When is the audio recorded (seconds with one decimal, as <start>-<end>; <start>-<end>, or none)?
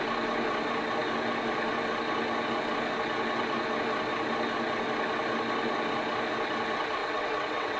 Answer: 0.0-7.0